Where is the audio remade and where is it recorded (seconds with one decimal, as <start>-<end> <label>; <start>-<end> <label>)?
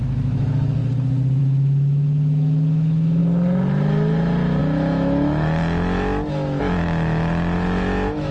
0.0-0.8 remade; 0.8-1.4 recorded; 1.4-3.2 remade; 3.2-4.6 recorded; 4.6-5.6 remade; 5.6-6.6 recorded; 6.6-8.3 remade